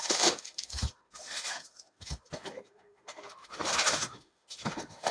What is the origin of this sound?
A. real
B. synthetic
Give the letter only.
B